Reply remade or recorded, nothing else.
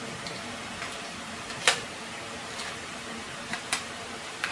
remade